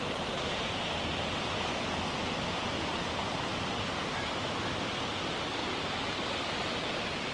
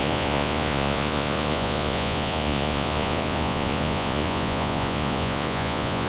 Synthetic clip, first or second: second